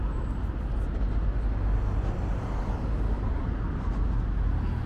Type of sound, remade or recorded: recorded